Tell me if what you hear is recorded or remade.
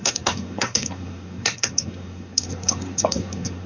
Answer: remade